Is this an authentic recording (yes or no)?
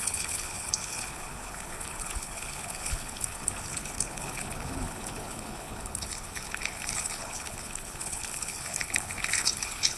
no